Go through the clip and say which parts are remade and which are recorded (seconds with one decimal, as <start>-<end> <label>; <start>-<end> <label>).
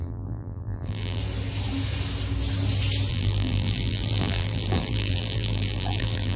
0.0-1.2 remade; 1.2-3.1 recorded; 3.1-6.4 remade